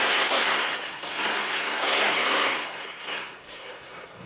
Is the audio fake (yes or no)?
yes